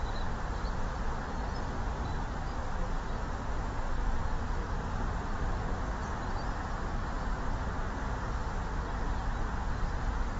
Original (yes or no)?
yes